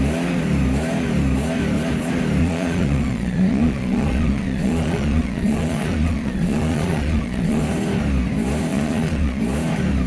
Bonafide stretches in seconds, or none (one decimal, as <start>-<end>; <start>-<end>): 0.0-2.4; 7.6-8.7; 9.4-10.1

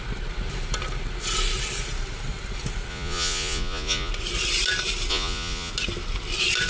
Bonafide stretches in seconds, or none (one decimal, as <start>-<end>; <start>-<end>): 0.0-2.9; 4.1-5.1; 5.7-6.7